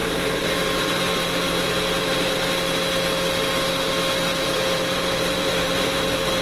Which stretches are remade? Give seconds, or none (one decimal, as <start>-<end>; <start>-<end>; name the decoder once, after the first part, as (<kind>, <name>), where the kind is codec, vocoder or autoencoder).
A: 0.0-2.5 (vocoder, BigVGAN v2); 4.3-6.4